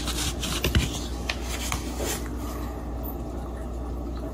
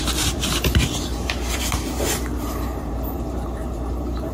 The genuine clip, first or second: first